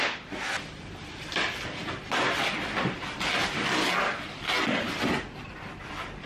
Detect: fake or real real